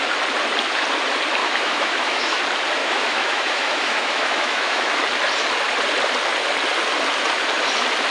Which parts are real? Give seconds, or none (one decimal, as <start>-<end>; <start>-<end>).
0.0-1.4; 2.4-2.8; 5.0-8.1